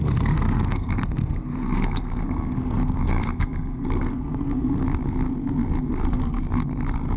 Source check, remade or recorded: remade